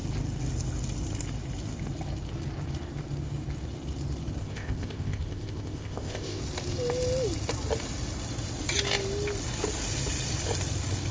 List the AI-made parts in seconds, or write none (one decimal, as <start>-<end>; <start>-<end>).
4.4-6.4